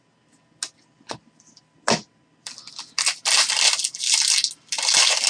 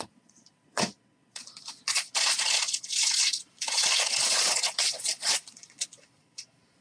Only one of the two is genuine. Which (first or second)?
first